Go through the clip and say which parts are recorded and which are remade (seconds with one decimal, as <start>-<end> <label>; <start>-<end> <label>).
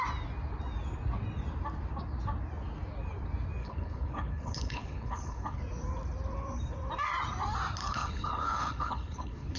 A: 0.0-3.6 recorded; 3.6-5.6 remade; 5.6-7.8 recorded; 7.8-9.6 remade